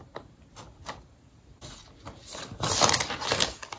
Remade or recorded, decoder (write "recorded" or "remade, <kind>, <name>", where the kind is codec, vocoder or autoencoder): recorded